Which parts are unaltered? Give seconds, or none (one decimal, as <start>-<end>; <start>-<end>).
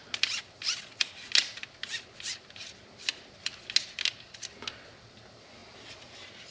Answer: 0.0-6.5